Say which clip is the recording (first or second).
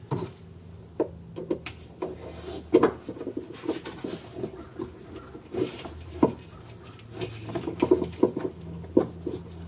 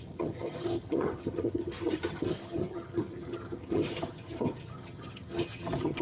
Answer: first